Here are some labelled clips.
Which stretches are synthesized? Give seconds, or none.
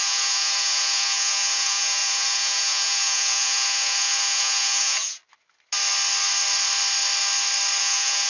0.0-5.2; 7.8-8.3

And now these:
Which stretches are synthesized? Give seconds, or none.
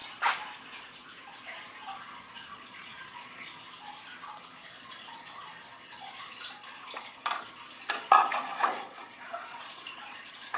2.5-3.5; 7.9-10.6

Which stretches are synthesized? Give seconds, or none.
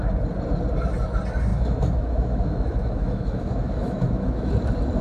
1.5-4.5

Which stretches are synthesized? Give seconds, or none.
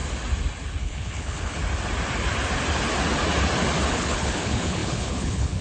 0.8-1.6; 3.9-5.6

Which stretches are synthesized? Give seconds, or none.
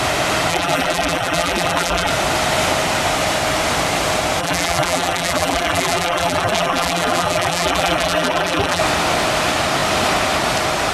0.5-2.1; 4.4-8.8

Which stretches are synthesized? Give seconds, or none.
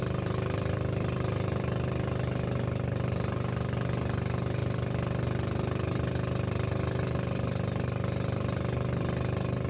none